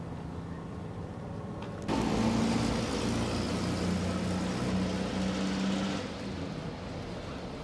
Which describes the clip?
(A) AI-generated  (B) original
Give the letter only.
B